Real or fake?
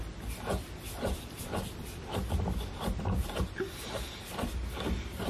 fake